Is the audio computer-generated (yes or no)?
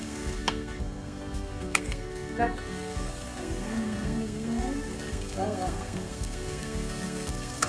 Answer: yes